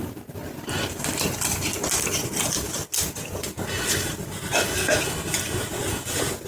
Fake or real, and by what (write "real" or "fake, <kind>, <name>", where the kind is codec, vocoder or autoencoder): real